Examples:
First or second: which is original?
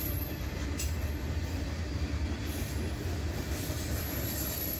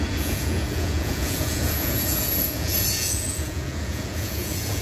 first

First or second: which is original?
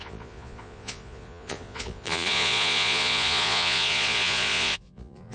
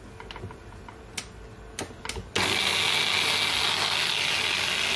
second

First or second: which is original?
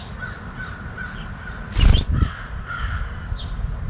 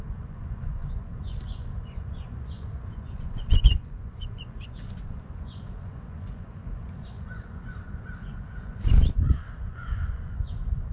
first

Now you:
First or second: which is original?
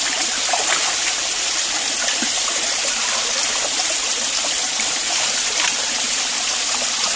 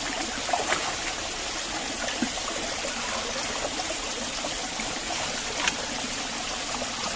second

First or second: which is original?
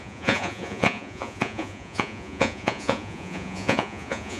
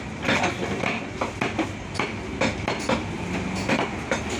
second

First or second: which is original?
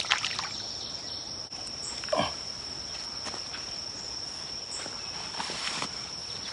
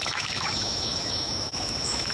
first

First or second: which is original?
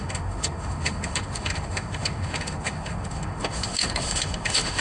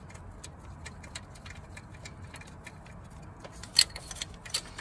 second